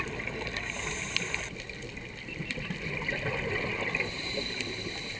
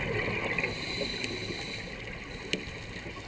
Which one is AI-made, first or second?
first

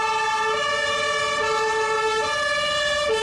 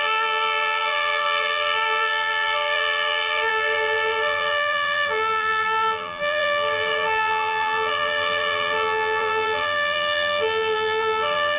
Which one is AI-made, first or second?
second